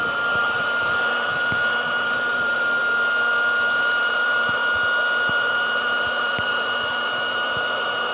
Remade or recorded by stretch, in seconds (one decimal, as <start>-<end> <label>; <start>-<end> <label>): 0.0-2.8 remade; 2.8-3.8 recorded; 3.8-4.6 remade; 4.6-5.3 recorded; 5.3-8.1 remade